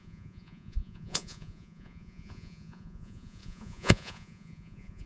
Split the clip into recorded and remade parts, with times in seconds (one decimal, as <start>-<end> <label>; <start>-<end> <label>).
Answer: 0.0-5.1 remade